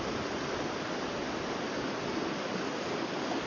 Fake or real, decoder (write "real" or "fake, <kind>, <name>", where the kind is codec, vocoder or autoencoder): real